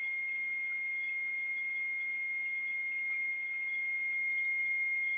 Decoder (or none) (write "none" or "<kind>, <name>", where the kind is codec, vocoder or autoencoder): none